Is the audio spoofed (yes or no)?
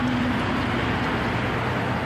no